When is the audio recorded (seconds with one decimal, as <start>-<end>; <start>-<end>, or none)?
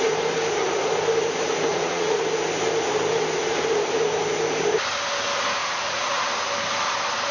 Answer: 0.0-1.7; 2.2-5.6; 6.2-7.3